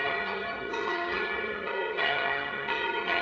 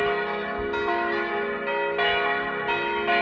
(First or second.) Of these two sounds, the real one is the second